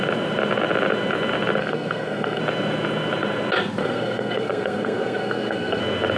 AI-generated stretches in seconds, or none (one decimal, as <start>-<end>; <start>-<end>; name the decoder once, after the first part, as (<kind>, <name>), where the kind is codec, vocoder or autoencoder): 1.6-2.4 (codec, SNAC); 3.8-5.8